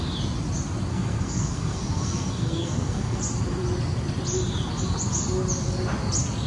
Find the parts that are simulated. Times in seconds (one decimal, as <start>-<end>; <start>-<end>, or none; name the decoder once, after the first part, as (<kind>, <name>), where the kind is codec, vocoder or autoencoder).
0.9-3.2 (codec, SNAC)